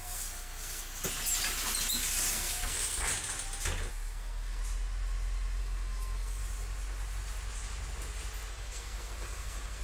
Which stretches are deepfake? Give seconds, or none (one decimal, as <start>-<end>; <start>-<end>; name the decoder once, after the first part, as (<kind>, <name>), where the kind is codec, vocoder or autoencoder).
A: 0.0-1.0 (codec, SNAC); 2.3-3.1; 3.9-4.6; 5.6-6.4; 8.5-9.8